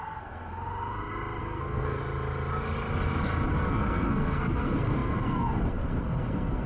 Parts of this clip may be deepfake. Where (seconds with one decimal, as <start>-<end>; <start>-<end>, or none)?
0.0-0.5; 1.4-2.0; 3.5-6.7